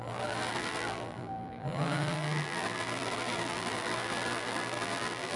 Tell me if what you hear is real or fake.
fake